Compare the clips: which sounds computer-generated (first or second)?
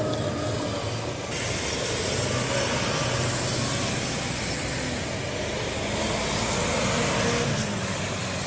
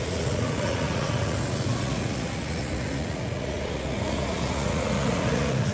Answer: second